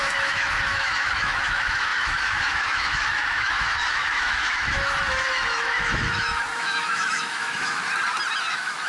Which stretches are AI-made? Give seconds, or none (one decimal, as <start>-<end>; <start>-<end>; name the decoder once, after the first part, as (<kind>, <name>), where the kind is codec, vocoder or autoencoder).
0.0-7.8 (autoencoder, DAC-VAE); 8.5-8.9